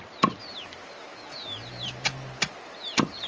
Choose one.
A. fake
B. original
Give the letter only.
B